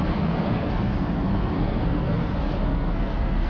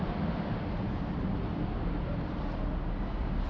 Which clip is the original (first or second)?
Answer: second